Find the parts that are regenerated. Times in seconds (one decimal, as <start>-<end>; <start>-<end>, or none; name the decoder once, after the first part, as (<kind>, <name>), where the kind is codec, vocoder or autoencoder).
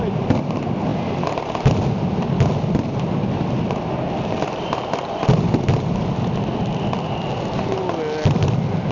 none